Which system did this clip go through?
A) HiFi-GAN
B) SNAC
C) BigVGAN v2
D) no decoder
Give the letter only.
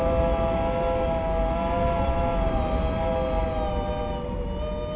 D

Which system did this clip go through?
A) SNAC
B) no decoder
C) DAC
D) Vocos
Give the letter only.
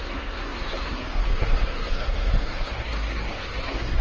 A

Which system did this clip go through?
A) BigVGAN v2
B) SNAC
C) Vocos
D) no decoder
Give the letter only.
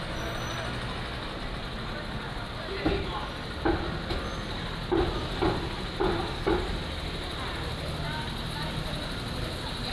D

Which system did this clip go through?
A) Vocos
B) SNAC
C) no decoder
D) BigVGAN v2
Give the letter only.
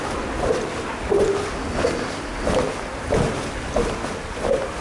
C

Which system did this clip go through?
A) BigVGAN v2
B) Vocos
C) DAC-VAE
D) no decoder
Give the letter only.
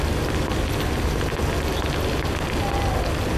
D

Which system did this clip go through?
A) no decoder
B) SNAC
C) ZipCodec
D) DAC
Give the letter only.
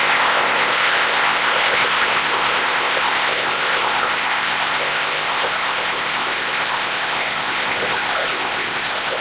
C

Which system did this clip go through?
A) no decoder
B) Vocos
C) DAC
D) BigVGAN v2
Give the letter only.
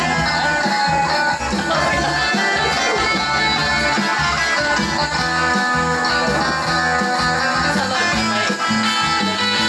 A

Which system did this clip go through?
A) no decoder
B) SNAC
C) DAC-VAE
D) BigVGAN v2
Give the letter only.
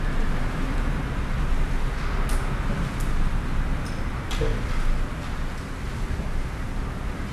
A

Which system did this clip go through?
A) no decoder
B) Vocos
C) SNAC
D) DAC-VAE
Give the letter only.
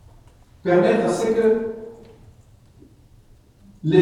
A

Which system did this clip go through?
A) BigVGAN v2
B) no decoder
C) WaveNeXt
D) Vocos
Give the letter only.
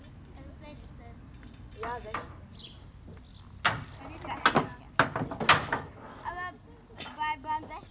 B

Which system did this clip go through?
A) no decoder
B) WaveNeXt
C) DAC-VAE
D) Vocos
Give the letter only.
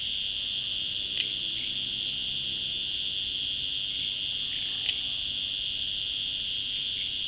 A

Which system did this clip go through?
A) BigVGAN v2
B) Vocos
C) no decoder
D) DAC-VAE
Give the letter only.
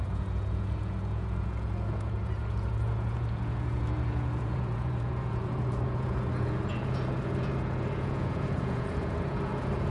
B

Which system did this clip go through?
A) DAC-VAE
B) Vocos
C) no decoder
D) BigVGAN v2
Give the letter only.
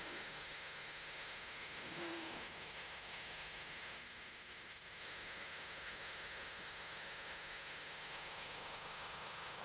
A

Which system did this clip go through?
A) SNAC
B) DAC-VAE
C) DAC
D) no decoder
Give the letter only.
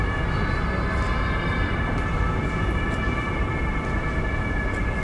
D